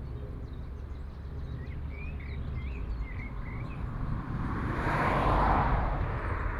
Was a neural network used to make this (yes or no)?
no